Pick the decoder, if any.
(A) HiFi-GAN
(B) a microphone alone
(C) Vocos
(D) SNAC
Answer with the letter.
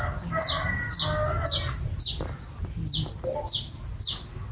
B